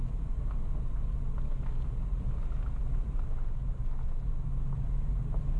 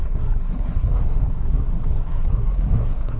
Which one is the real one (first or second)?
first